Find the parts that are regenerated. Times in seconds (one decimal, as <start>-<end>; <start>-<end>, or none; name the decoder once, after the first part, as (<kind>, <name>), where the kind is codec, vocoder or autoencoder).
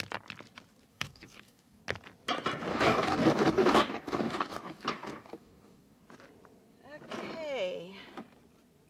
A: 0.9-1.8 (codec, DAC); 2.7-6.0